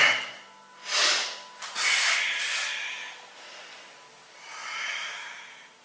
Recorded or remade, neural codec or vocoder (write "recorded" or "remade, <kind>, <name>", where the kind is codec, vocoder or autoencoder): recorded